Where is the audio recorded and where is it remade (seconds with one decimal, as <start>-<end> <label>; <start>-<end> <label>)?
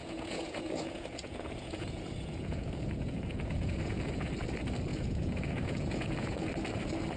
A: 0.0-4.3 remade; 4.3-4.9 recorded; 4.9-6.5 remade; 6.5-7.2 recorded